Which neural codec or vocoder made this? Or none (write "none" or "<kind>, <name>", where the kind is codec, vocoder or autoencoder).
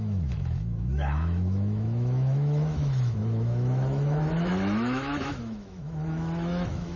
autoencoder, DAC-VAE